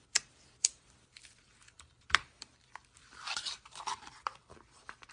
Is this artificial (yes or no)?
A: yes